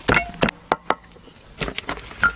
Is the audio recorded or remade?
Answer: recorded